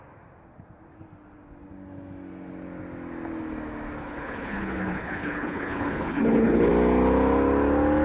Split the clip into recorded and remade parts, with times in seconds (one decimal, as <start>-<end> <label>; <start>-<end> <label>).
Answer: 0.0-4.0 recorded; 4.0-6.7 remade; 6.7-8.0 recorded